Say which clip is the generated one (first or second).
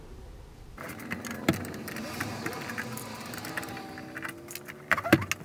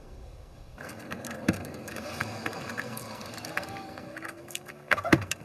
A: second